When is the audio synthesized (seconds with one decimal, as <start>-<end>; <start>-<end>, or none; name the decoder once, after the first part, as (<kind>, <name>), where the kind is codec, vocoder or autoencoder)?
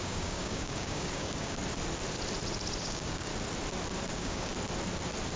0.0-1.6 (codec, DAC); 2.8-3.3; 4.1-4.5